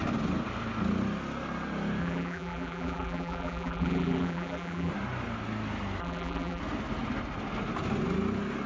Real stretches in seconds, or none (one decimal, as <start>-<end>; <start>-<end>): 0.0-2.0; 4.9-6.0; 6.6-8.7